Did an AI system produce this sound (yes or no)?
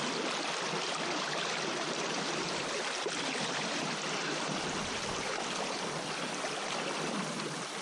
no